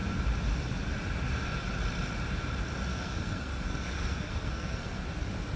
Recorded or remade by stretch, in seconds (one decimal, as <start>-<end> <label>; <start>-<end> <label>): 0.0-2.9 recorded; 2.9-5.0 remade; 5.0-5.6 recorded